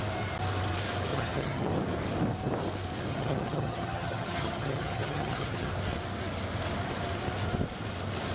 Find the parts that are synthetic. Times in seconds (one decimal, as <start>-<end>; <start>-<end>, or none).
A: 1.1-1.7; 3.1-5.7